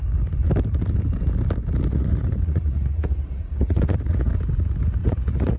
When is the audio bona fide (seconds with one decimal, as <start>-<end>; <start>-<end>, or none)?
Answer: 0.0-1.9; 4.3-5.0